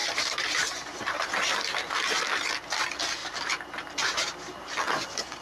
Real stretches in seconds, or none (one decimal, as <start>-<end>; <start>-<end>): 1.3-3.2; 4.7-5.4